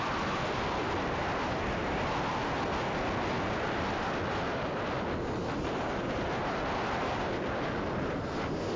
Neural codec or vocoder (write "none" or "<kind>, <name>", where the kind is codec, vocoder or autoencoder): none